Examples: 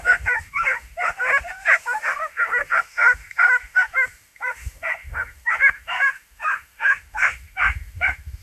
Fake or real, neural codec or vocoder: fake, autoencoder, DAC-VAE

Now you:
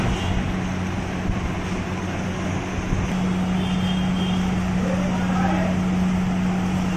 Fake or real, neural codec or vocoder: real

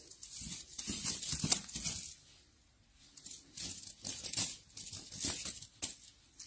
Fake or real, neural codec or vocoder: real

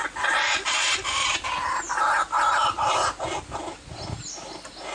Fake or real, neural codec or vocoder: real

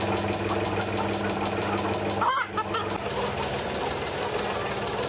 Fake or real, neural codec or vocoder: real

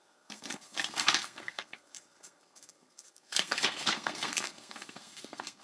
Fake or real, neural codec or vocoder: fake, codec, SNAC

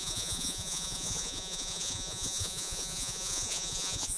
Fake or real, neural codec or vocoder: fake, vocoder, Vocos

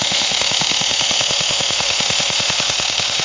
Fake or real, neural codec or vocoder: fake, autoencoder, DAC-VAE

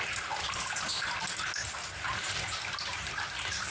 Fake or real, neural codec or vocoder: real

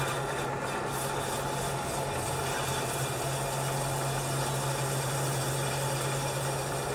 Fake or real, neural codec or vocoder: real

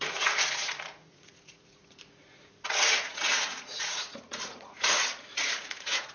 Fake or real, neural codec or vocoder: fake, vocoder, Vocos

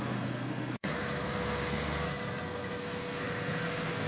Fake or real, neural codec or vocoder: fake, codec, SNAC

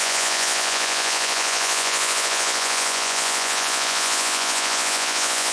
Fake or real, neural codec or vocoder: fake, vocoder, Vocos